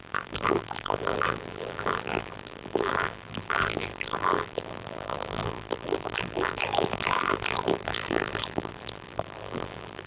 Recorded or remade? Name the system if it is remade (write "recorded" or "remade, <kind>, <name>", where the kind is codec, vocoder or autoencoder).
remade, vocoder, BigVGAN v2